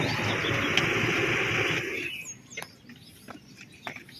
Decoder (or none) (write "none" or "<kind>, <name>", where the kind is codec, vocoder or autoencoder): none